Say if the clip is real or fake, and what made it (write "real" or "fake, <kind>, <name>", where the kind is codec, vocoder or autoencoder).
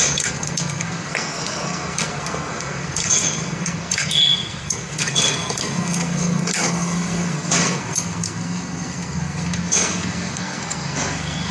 fake, codec, SNAC